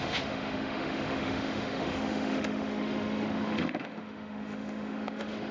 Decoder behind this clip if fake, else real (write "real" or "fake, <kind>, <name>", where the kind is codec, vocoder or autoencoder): fake, autoencoder, DAC-VAE